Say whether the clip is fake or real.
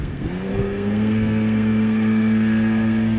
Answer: fake